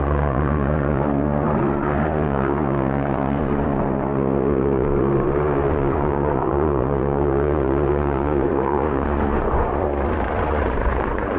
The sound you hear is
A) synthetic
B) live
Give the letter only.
A